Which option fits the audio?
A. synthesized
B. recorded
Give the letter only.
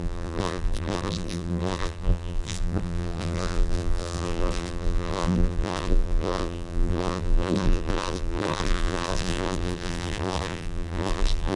A